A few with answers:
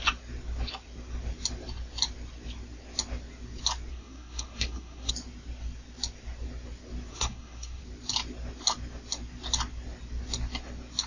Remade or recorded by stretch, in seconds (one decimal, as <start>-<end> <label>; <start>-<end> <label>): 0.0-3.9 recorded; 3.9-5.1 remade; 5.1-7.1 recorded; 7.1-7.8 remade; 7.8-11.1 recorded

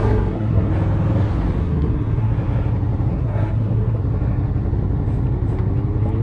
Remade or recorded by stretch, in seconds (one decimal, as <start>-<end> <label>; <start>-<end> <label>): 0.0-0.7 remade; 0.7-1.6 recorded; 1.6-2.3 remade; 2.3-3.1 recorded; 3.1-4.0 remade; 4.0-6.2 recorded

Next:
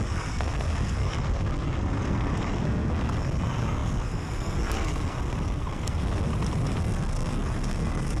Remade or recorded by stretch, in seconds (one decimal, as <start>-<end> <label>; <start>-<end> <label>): 0.0-6.3 remade; 6.3-6.8 recorded; 6.8-8.2 remade

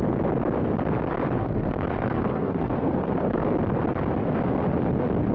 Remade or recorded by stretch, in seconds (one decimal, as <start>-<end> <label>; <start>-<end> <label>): 0.0-1.4 recorded; 1.4-3.4 remade; 3.4-5.3 recorded

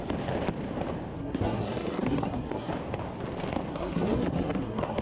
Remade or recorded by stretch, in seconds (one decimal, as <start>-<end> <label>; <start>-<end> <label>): 0.0-1.2 recorded; 1.2-2.7 remade; 2.7-3.7 recorded; 3.7-5.0 remade

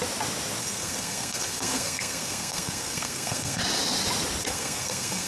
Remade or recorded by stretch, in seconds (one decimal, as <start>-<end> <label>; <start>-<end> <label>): 0.0-0.6 recorded; 0.6-3.6 remade; 3.6-4.4 recorded; 4.4-5.3 remade

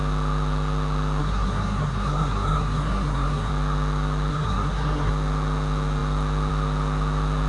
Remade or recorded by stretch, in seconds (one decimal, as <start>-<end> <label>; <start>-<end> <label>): 0.0-1.2 recorded; 1.2-3.5 remade; 3.5-4.3 recorded; 4.3-5.1 remade; 5.1-7.5 recorded